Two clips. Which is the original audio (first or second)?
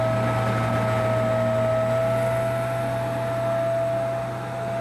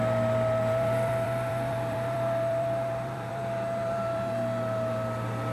first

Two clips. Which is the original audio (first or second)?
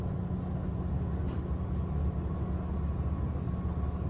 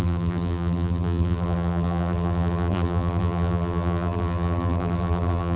first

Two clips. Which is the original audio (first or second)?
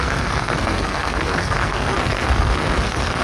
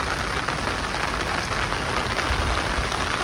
second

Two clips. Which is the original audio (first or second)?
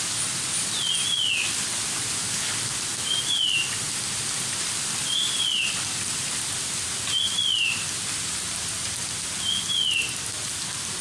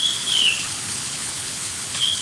first